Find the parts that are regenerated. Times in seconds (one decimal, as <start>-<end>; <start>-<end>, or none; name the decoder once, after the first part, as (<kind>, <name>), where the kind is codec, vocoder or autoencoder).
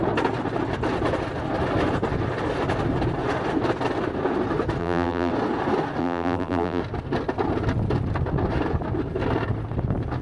4.8-5.3 (vocoder, BigVGAN v2); 6.0-6.8